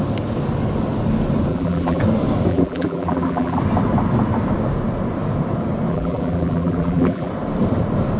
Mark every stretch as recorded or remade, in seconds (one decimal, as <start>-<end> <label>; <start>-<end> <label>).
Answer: 0.0-1.5 recorded; 1.5-2.0 remade; 2.0-2.5 recorded; 2.5-3.6 remade; 3.6-5.9 recorded; 5.9-7.3 remade; 7.3-8.2 recorded